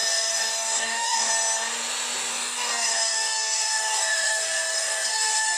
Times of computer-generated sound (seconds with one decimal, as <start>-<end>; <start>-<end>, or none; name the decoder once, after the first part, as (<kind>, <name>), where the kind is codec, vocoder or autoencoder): 0.0-1.3 (codec, DAC); 2.3-5.6